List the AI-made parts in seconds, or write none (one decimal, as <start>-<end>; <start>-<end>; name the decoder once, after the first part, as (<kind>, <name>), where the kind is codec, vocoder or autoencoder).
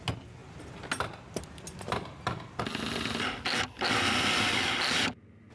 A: none